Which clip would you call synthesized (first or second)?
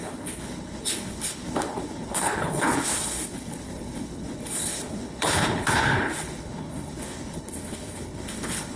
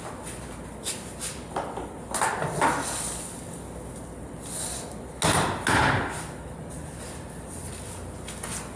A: first